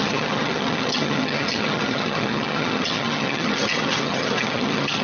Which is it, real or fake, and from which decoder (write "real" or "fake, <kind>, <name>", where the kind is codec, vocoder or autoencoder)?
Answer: fake, vocoder, HiFi-GAN